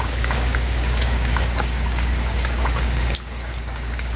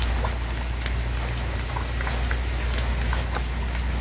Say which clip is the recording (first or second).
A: second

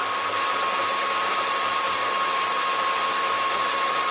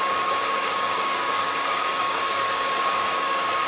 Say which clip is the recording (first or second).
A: first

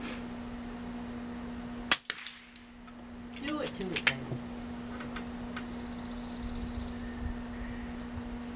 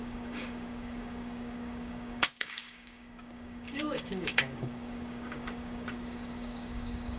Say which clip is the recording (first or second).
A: first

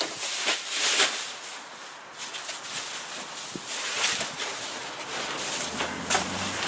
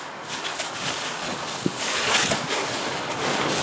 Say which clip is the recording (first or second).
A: first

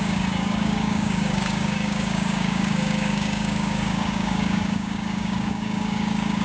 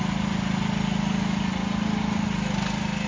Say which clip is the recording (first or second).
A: second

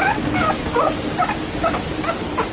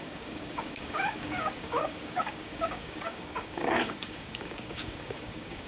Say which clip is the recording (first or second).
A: first